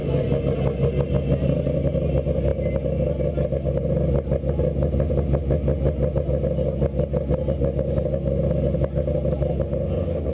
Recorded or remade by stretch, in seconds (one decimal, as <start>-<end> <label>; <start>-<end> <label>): 0.0-10.3 recorded